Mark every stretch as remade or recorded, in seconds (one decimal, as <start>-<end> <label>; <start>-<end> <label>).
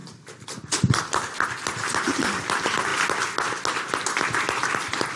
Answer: 0.0-5.2 recorded